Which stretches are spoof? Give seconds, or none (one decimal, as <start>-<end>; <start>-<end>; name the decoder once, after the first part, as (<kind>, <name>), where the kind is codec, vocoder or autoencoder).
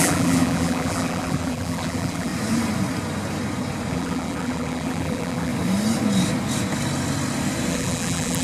0.0-2.3 (vocoder, BigVGAN v2); 3.9-5.5; 7.7-8.4